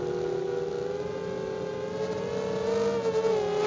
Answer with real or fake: real